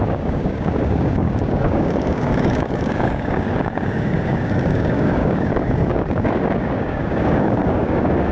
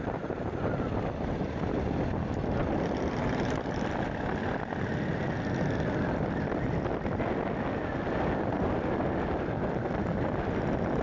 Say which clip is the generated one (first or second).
first